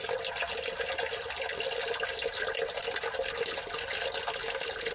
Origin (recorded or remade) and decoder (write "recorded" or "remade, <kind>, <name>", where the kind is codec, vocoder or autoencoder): recorded